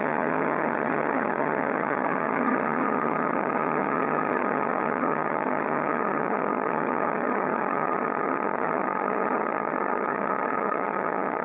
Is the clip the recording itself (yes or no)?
no